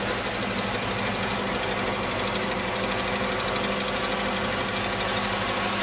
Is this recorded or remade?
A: recorded